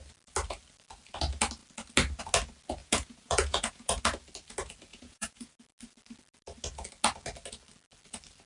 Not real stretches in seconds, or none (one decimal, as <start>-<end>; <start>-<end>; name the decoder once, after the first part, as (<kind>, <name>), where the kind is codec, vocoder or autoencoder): 2.8-4.0 (vocoder, Vocos); 4.9-5.6